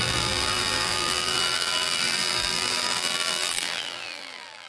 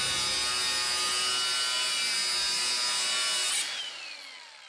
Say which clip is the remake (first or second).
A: first